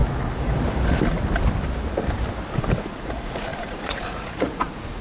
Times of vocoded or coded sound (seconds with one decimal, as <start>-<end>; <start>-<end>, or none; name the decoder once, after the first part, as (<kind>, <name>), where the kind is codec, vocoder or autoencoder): 3.0-5.0 (vocoder, Vocos)